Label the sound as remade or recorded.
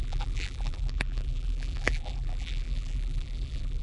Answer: remade